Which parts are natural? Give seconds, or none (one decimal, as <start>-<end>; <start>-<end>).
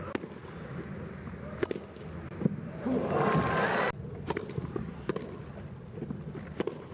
0.0-6.9